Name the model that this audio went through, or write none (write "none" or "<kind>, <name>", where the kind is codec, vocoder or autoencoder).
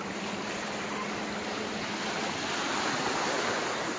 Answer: none